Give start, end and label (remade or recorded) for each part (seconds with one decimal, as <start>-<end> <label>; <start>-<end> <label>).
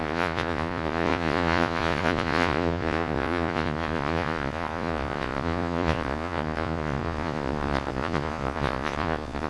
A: 0.0-9.5 remade